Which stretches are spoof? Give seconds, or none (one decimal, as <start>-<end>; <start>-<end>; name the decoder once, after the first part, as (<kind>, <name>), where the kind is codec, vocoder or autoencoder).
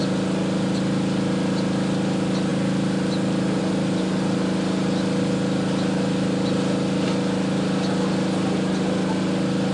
none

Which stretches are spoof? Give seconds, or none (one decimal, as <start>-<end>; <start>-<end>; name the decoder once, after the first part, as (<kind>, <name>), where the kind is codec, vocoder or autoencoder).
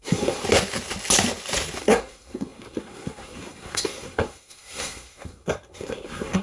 0.0-0.4 (codec, SNAC); 1.8-6.4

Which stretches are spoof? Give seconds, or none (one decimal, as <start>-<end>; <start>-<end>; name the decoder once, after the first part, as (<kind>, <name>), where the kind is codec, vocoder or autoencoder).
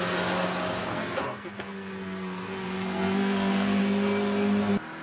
0.8-3.8 (codec, SNAC)